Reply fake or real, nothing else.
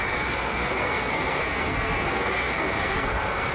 fake